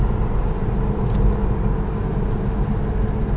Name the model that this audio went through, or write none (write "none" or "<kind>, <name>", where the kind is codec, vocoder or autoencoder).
none